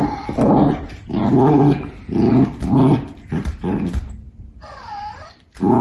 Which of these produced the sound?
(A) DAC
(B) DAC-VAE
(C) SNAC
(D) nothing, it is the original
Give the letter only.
D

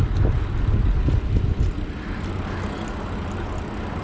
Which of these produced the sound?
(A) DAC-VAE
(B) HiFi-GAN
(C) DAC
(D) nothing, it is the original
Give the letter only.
D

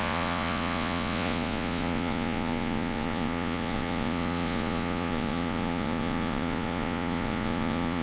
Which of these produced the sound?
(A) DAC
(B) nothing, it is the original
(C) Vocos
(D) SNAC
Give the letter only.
C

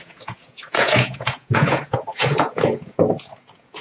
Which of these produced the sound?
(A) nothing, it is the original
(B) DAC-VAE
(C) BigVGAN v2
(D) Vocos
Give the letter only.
D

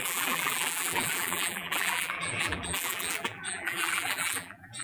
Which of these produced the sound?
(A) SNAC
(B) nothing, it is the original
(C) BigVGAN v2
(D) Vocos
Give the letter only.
C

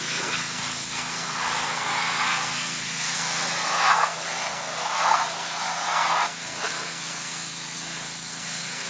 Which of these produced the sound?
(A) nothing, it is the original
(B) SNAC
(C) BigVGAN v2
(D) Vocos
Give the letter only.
B